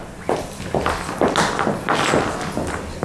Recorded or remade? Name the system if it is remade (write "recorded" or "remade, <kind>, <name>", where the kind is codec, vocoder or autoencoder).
recorded